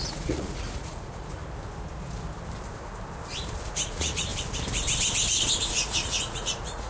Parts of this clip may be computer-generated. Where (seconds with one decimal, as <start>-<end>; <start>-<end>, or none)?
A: 0.0-1.4; 3.6-4.3; 5.7-6.9